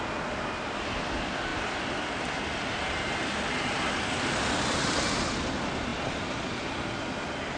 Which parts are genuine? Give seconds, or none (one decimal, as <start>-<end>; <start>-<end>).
0.0-7.6